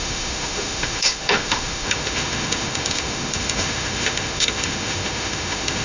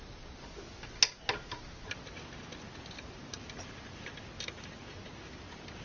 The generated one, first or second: first